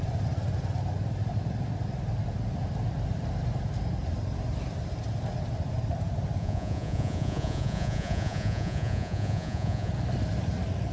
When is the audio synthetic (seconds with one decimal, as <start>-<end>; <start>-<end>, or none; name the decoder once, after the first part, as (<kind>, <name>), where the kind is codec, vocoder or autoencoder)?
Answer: 6.4-9.9 (vocoder, Vocos)

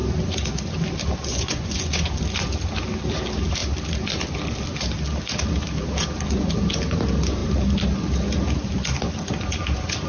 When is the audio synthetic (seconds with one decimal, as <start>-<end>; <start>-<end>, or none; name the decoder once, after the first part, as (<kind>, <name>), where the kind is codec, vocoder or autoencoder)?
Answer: 1.3-2.1 (vocoder, Vocos)

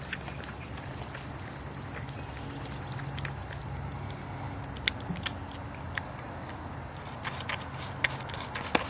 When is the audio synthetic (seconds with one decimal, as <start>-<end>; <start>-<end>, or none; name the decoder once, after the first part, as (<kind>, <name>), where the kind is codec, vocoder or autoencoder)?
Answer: none